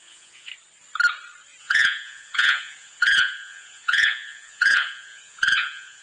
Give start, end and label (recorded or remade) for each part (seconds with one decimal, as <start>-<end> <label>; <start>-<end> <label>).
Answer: 0.0-0.5 remade; 0.5-1.6 recorded; 1.6-6.0 remade